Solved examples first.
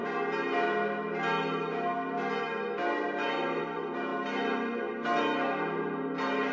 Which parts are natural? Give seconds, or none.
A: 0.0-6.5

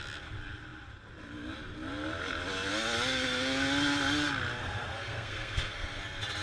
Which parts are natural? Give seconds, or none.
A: 0.0-4.6; 6.0-6.4